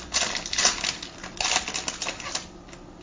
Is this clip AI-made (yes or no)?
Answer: no